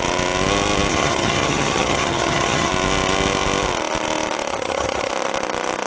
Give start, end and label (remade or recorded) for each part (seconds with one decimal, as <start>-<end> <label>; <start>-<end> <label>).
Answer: 0.0-0.9 recorded; 0.9-2.7 remade; 2.7-4.5 recorded; 4.5-5.1 remade; 5.1-5.9 recorded